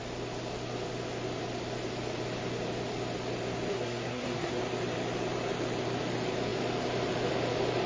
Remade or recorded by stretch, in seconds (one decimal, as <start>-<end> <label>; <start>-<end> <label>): 0.0-3.7 recorded; 3.7-4.6 remade; 4.6-7.9 recorded